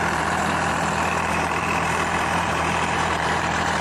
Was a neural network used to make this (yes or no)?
yes